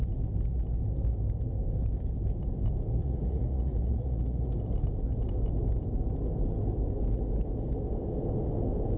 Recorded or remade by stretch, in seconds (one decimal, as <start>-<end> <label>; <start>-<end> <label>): 0.0-3.0 recorded; 3.0-4.5 remade; 4.5-9.0 recorded

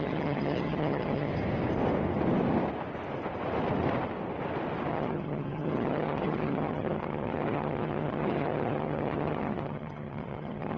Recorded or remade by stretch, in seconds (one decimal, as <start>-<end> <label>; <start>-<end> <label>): 0.0-1.3 remade; 1.3-4.9 recorded; 4.9-10.8 remade

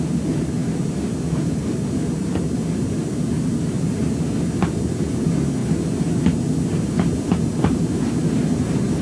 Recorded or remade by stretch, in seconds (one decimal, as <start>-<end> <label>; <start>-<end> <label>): 0.0-9.0 recorded

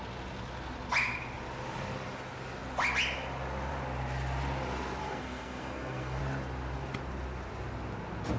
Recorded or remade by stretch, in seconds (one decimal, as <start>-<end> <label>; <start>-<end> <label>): 0.0-5.0 recorded; 5.0-6.2 remade; 6.2-8.4 recorded

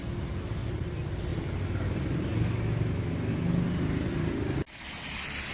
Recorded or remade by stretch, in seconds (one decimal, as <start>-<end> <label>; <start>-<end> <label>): 0.0-5.5 recorded

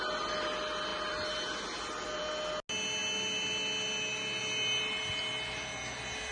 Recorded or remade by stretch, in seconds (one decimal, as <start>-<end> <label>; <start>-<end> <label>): 0.0-6.3 recorded